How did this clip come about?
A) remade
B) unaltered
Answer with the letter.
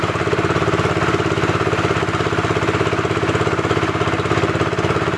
B